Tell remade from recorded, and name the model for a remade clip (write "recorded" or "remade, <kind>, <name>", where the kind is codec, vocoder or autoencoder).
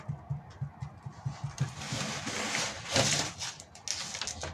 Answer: recorded